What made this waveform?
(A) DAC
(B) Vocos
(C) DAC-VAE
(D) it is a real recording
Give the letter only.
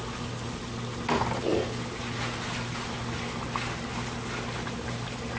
D